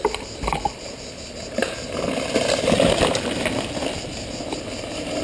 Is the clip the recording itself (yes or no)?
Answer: yes